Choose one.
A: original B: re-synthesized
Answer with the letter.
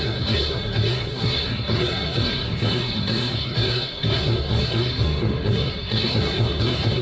B